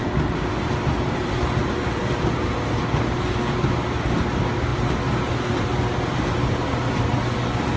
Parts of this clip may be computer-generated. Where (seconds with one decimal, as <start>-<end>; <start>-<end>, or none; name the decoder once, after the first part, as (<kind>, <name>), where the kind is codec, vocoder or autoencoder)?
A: none